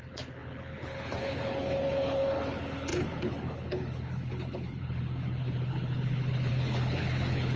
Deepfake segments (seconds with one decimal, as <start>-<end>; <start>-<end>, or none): 0.0-7.6